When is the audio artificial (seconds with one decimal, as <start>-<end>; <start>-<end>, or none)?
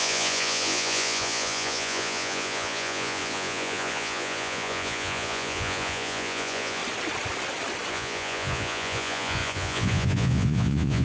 0.0-6.8; 7.9-11.0